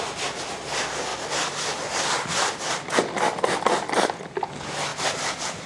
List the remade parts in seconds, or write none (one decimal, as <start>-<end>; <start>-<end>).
1.1-3.6; 4.9-5.7